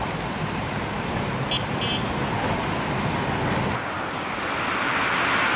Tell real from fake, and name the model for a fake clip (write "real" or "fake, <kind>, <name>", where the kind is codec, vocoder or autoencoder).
real